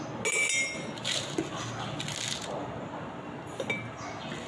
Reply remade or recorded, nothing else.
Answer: recorded